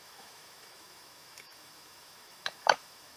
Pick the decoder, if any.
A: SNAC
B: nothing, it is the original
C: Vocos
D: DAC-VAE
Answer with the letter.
D